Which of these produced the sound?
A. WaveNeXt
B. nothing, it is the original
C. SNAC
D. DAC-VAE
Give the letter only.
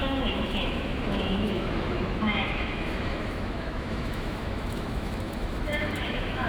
D